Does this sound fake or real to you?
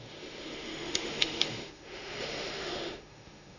fake